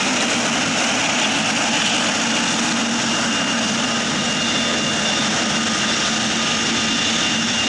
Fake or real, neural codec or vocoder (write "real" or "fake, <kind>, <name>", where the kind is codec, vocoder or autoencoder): real